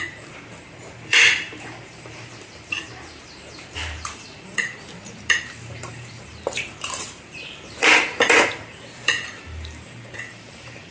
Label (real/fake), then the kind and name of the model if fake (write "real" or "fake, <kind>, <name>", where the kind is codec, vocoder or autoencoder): fake, vocoder, BigVGAN v2